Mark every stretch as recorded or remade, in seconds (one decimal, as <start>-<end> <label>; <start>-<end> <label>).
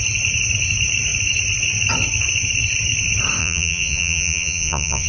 0.0-3.4 recorded; 3.4-5.1 remade